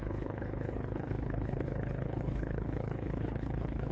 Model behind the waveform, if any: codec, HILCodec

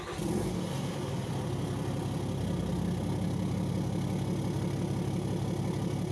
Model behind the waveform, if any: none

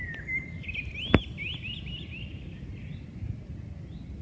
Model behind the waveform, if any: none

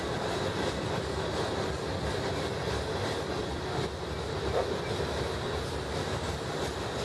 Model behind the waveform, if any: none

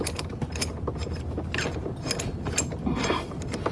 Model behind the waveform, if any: none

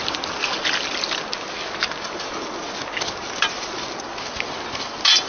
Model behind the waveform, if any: none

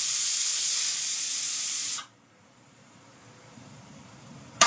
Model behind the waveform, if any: vocoder, BigVGAN v2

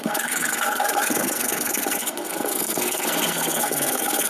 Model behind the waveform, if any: codec, SNAC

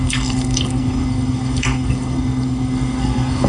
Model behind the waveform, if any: codec, SNAC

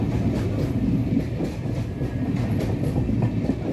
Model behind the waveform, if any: none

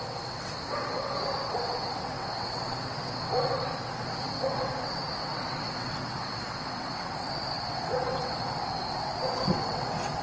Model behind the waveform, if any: vocoder, WaveNeXt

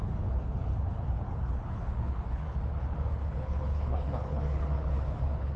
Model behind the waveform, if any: codec, HILCodec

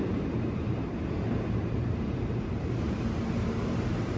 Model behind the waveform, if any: vocoder, BigVGAN v2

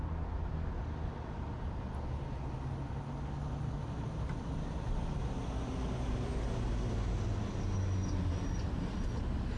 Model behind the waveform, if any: none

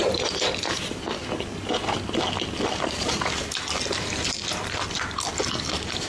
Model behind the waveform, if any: none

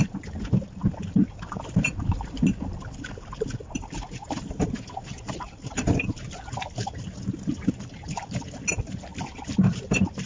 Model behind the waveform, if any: none